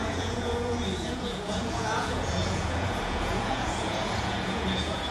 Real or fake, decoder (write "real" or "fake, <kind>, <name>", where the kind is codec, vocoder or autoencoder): fake, vocoder, Vocos